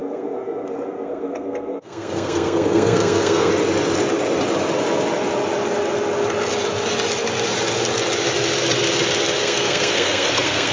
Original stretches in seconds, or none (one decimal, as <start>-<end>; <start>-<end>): 3.5-9.4